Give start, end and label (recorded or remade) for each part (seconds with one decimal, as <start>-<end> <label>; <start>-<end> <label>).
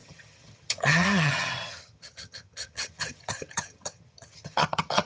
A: 0.0-5.1 remade